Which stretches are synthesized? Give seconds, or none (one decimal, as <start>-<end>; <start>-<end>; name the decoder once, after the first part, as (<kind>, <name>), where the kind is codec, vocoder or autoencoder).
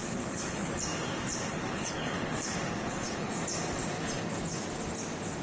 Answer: 0.0-0.7 (codec, HILCodec); 1.5-3.3